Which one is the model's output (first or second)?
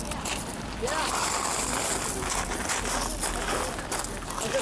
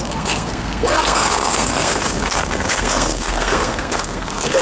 second